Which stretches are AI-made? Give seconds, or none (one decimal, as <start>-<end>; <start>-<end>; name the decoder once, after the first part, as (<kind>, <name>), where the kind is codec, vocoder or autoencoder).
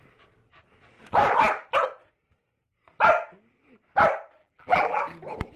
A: 4.4-5.0 (vocoder, BigVGAN v2)